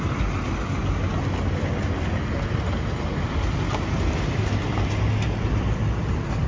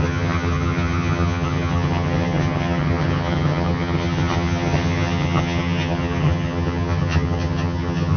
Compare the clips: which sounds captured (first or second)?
first